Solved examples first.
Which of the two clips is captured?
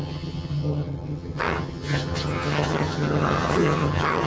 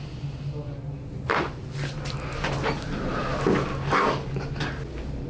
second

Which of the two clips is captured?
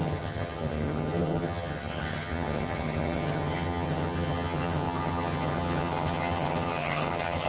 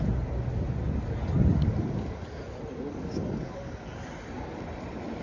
second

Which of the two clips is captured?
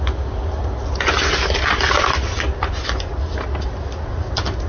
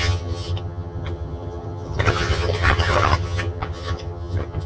first